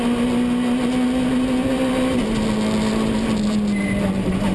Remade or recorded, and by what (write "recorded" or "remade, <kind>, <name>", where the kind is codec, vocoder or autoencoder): recorded